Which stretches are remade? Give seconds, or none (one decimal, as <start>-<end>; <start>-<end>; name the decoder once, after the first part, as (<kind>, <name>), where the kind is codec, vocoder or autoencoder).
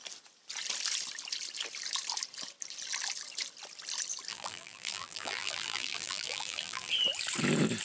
4.3-6.9 (vocoder, BigVGAN v2)